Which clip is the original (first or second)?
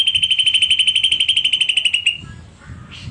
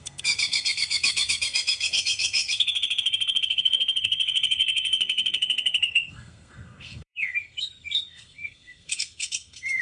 first